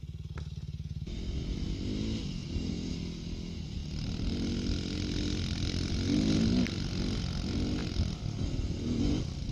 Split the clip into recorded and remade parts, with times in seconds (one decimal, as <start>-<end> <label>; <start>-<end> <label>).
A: 0.0-2.4 recorded; 2.4-2.9 remade; 2.9-9.5 recorded